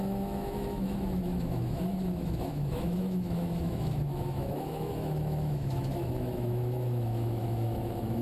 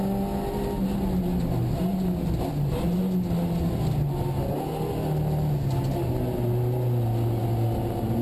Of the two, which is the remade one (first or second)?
first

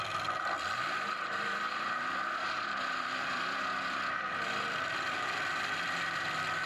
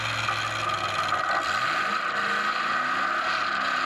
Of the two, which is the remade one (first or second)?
first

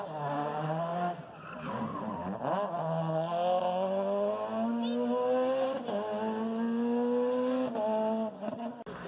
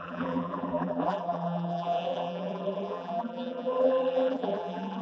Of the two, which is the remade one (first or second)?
second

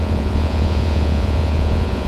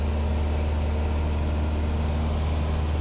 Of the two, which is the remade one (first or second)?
first